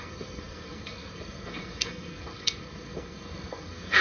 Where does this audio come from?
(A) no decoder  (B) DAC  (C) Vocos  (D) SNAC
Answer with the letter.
D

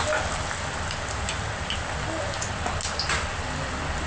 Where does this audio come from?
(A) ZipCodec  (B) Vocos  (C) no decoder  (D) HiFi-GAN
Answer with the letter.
C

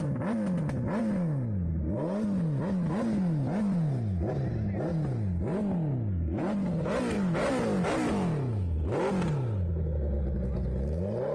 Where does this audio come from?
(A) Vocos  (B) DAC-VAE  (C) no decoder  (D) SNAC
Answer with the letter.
C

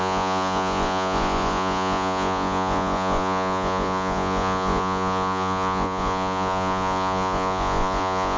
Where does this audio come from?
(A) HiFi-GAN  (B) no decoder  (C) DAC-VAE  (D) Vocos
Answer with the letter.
D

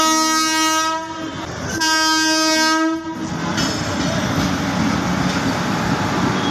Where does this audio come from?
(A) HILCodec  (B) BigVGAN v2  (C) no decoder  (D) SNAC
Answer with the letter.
C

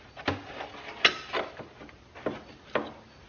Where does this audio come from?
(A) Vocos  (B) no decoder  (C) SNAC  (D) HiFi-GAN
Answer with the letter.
B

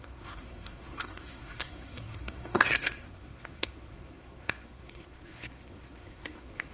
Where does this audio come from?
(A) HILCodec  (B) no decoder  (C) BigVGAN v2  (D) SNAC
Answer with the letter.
D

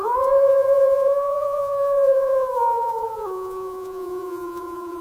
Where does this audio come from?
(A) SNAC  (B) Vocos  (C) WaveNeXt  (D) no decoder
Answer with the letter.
B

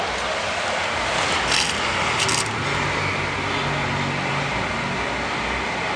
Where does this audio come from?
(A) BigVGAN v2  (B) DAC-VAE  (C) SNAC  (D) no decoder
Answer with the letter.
D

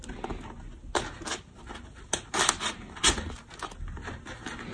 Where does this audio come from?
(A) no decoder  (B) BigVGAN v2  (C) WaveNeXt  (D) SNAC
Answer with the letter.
A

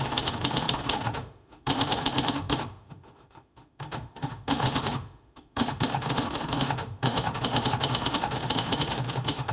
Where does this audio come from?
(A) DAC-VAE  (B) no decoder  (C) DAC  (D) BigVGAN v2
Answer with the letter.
A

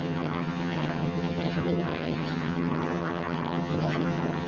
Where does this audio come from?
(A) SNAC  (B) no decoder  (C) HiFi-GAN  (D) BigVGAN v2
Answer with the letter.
C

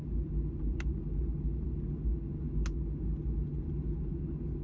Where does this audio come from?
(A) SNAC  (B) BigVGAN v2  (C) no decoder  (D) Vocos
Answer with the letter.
C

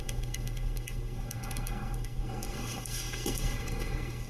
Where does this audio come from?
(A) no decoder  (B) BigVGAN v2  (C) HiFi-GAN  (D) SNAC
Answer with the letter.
D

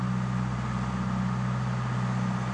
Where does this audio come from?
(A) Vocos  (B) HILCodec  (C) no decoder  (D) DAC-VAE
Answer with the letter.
C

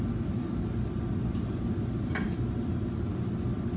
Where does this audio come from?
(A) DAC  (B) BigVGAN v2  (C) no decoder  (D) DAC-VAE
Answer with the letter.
C